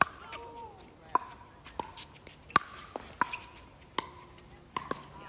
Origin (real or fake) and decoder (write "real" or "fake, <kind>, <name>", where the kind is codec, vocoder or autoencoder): real